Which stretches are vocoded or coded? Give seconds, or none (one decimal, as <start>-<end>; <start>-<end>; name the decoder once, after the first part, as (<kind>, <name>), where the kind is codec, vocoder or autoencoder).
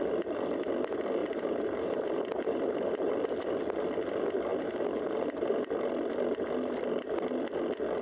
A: 1.2-3.1 (vocoder, BigVGAN v2); 4.5-5.7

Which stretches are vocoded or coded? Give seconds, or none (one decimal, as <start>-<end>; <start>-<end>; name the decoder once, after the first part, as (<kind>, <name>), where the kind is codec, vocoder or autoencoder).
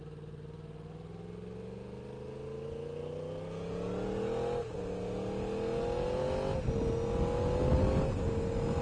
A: none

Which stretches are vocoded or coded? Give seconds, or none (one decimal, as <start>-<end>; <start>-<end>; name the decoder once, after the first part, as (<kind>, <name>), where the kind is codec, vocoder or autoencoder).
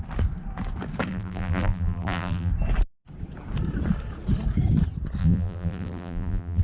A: 1.1-2.5 (vocoder, BigVGAN v2); 5.2-6.6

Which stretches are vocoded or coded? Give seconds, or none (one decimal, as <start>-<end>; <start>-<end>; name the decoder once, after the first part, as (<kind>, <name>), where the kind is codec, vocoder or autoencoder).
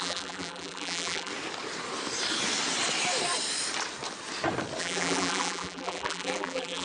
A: 0.0-1.3 (vocoder, BigVGAN v2); 4.8-6.8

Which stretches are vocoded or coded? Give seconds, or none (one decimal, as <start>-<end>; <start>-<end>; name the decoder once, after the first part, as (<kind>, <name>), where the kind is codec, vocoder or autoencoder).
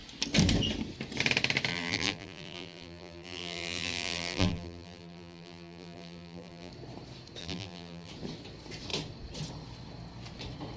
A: 1.7-6.7 (vocoder, BigVGAN v2); 7.4-8.1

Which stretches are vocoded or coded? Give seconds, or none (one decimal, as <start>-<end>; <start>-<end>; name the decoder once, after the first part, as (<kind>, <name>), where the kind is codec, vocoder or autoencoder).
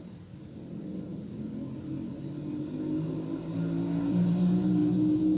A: 0.0-1.1 (vocoder, BigVGAN v2); 4.1-4.8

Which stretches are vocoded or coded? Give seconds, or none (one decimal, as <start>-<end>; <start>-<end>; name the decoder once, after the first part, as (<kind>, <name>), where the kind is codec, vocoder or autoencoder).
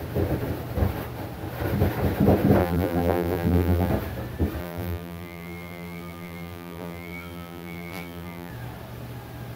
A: 2.6-3.9 (vocoder, BigVGAN v2); 4.6-8.5